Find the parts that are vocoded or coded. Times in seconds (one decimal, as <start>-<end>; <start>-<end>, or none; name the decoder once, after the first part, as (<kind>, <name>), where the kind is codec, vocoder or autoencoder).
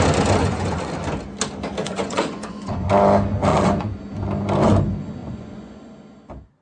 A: 0.4-0.9 (vocoder, Vocos); 1.8-2.9; 3.5-4.0; 5.2-5.9